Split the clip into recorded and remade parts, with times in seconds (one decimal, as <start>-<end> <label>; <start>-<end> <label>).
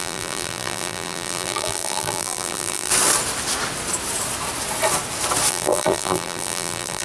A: 0.0-2.9 remade; 2.9-5.5 recorded; 5.5-7.0 remade